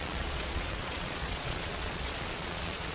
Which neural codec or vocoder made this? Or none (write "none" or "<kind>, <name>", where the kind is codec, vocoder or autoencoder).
vocoder, Vocos